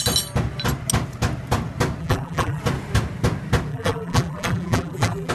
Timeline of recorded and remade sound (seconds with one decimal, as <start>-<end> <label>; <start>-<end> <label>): 0.0-2.0 recorded; 2.0-2.6 remade; 2.6-3.7 recorded; 3.7-5.3 remade